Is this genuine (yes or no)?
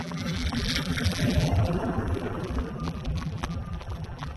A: no